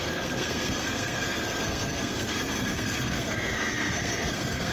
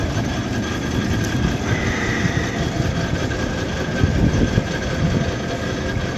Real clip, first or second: second